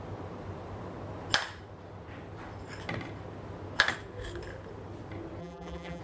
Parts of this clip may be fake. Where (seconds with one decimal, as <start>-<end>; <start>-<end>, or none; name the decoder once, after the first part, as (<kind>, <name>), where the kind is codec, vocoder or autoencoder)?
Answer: 5.4-6.0 (vocoder, BigVGAN v2)